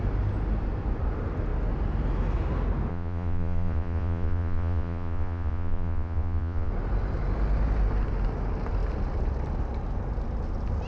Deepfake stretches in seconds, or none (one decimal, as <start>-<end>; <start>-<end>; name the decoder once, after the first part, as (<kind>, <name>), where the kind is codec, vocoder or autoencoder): 2.9-6.7 (vocoder, Vocos)